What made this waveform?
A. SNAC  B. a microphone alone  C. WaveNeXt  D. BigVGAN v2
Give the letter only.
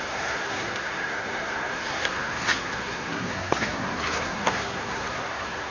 A